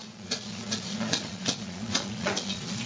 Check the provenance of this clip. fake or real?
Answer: fake